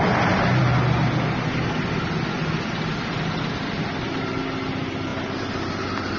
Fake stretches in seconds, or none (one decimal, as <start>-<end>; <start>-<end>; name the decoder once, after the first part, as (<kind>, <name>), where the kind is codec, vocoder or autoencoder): none